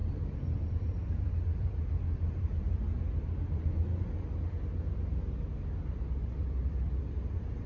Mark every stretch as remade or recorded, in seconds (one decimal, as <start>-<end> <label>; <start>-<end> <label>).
0.0-4.0 remade; 4.0-6.4 recorded; 6.4-7.0 remade; 7.0-7.7 recorded